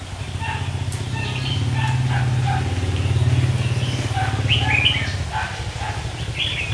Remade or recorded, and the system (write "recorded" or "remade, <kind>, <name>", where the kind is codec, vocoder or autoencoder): recorded